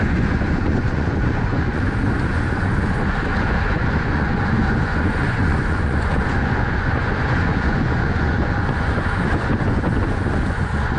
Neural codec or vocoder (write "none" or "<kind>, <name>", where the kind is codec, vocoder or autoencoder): vocoder, Vocos